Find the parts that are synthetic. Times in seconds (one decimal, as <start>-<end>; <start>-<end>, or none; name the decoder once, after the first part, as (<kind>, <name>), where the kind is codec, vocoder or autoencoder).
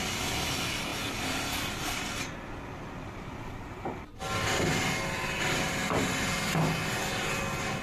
none